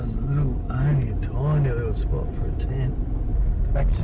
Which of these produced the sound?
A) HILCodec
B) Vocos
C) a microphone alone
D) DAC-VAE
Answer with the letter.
C